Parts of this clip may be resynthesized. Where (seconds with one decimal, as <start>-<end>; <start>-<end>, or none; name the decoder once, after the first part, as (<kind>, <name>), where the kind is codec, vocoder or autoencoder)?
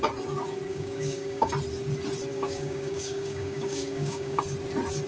0.7-1.5 (codec, DAC); 2.3-4.4